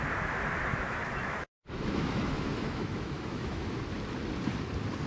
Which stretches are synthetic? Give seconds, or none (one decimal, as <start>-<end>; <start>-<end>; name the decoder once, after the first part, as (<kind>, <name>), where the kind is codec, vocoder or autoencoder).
0.7-3.8 (autoencoder, DAC-VAE)